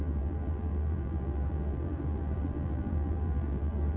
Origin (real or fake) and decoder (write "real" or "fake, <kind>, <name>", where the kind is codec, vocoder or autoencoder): fake, vocoder, BigVGAN v2